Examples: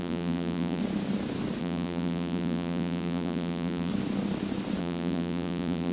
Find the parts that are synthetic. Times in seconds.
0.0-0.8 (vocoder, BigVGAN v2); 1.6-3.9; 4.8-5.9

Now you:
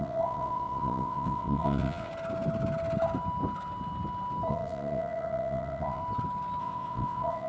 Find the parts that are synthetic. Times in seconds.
0.0-2.1 (vocoder, WaveNeXt); 4.5-6.0; 6.6-7.5

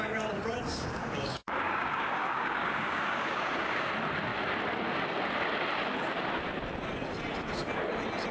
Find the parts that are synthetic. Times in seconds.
0.7-3.9 (codec, DAC)

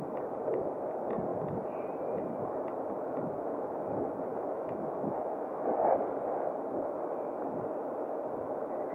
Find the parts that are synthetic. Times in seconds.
4.3-5.7 (autoencoder, DAC-VAE)

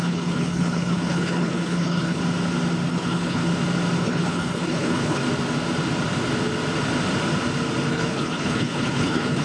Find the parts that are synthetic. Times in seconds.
0.0-2.2 (codec, HILCodec); 2.9-3.4; 4.0-5.2; 7.9-9.4

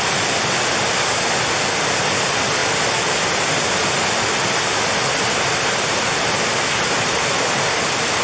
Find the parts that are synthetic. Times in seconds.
none

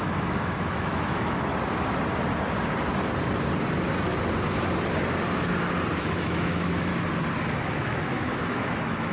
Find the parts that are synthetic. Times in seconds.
0.0-1.5 (autoencoder, DAC-VAE); 6.0-6.9; 7.5-9.1

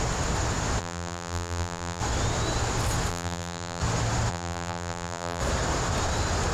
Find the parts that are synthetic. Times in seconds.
0.8-2.0 (vocoder, BigVGAN v2); 3.1-3.8; 4.3-5.4